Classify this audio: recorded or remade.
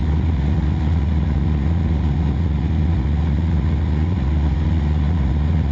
remade